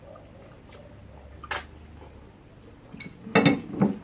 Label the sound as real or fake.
real